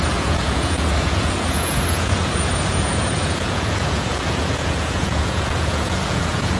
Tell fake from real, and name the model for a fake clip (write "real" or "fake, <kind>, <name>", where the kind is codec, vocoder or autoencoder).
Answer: fake, vocoder, Vocos